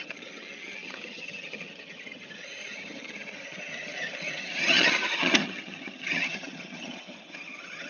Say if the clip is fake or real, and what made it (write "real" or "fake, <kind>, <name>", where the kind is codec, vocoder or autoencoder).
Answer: fake, vocoder, HiFi-GAN